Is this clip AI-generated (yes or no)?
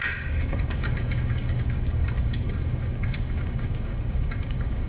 yes